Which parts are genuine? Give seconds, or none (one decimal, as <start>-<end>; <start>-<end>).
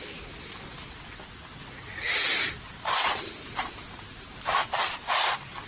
0.0-2.3; 5.3-5.7